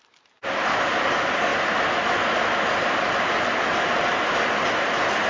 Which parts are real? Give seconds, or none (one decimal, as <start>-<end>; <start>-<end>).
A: 0.0-5.3